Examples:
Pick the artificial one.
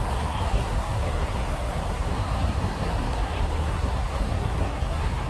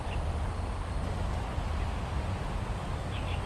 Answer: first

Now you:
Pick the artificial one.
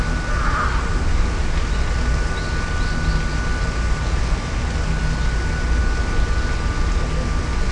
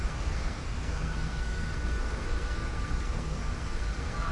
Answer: second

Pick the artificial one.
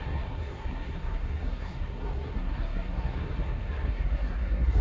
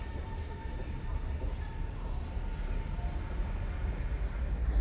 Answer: first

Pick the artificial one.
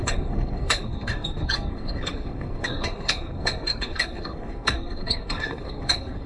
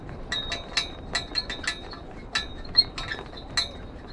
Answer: first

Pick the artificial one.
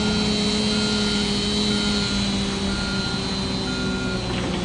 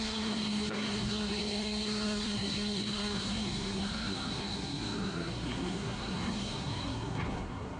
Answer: second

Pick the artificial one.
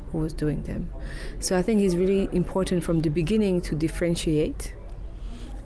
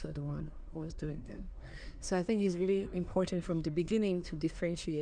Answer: second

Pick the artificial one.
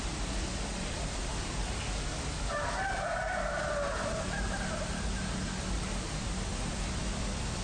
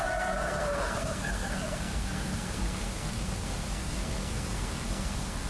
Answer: second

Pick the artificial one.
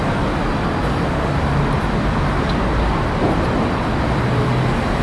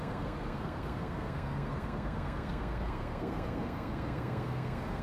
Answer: second